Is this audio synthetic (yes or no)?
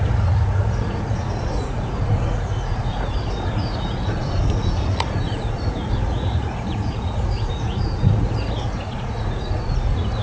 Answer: yes